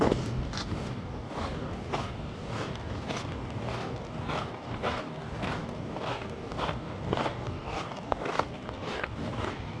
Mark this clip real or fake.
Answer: fake